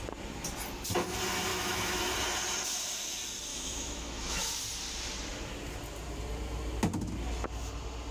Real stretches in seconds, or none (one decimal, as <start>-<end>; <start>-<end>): 0.0-1.5; 2.0-3.5; 4.5-8.1